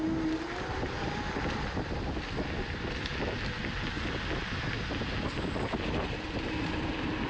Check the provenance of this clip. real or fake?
real